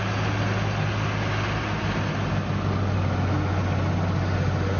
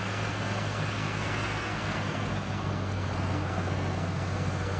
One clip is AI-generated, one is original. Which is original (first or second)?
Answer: first